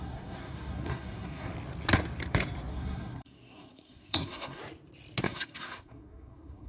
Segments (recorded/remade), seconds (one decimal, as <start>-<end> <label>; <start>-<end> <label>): 0.0-1.5 remade; 1.5-2.7 recorded; 2.7-4.6 remade; 4.6-5.2 recorded; 5.2-6.7 remade